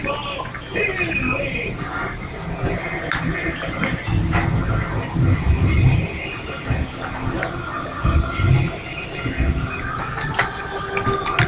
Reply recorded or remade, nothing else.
recorded